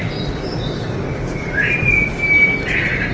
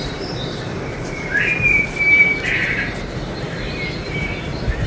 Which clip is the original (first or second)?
first